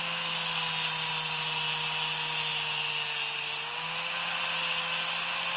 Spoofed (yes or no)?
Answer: no